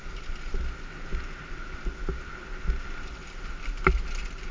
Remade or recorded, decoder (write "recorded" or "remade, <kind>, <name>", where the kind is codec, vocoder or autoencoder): recorded